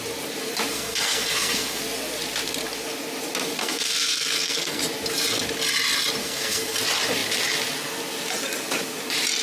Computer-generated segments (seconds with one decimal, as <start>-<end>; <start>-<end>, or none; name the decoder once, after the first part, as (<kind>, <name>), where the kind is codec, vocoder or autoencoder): 0.7-1.8 (codec, SNAC); 3.6-4.8; 6.2-6.8